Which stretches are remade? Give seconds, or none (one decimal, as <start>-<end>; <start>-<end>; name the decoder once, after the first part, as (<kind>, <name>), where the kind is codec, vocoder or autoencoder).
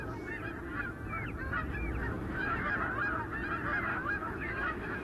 2.0-2.7 (autoencoder, DAC-VAE); 3.9-5.0